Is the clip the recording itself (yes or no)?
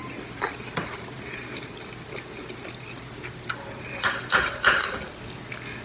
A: yes